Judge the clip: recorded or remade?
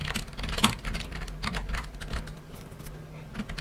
recorded